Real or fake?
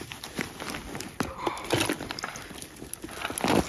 real